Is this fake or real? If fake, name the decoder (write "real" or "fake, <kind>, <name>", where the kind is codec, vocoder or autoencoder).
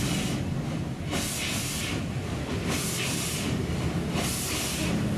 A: real